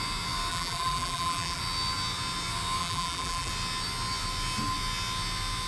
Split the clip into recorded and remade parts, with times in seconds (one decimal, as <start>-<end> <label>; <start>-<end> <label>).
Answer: 0.0-0.5 recorded; 0.5-1.6 remade; 1.6-2.8 recorded; 2.8-3.5 remade; 3.5-5.7 recorded